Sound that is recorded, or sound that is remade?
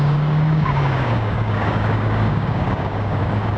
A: remade